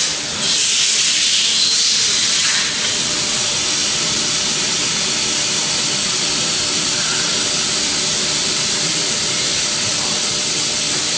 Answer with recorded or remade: remade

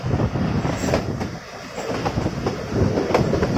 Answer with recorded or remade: recorded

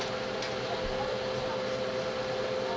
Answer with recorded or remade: recorded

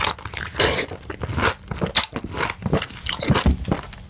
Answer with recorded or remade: recorded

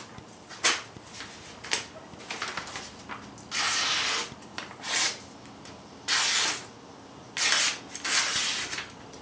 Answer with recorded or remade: recorded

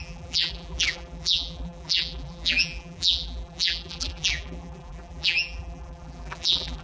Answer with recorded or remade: remade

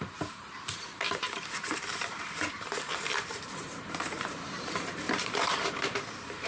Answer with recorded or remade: remade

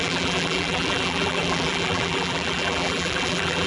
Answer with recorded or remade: remade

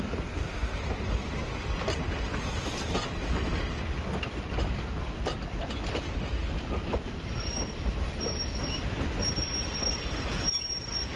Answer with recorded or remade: remade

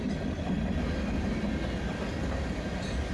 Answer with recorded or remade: recorded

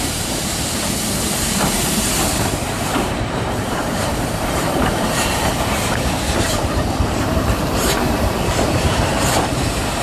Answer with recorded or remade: remade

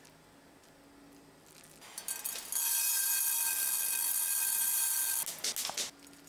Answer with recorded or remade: recorded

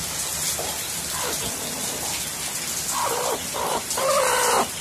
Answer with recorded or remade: recorded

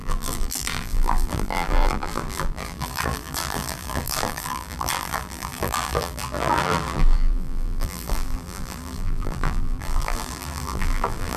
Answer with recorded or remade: remade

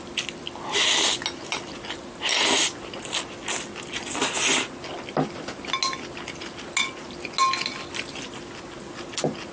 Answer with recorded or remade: recorded